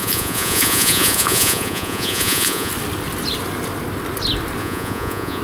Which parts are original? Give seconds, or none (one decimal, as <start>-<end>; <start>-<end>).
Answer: 2.7-4.6